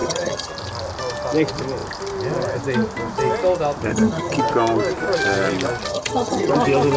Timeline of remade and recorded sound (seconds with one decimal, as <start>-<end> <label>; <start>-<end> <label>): 0.0-0.5 remade; 0.5-3.9 recorded; 3.9-4.4 remade; 4.4-5.9 recorded; 5.9-6.5 remade; 6.5-7.0 recorded